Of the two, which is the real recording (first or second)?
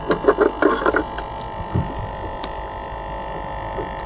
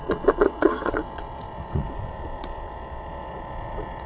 first